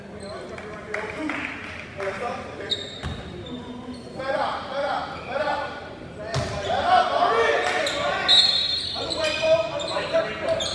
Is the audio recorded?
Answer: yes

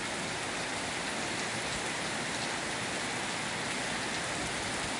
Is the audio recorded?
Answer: yes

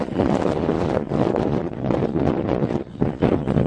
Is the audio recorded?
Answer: no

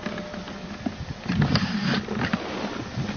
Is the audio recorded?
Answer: yes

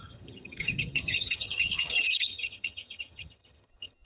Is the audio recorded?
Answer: no